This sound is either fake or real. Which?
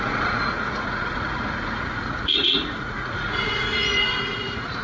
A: fake